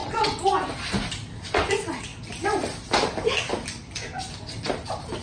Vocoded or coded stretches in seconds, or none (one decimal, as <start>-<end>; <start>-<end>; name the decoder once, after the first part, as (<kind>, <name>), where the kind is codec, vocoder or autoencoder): 0.0-0.5 (vocoder, WaveNeXt)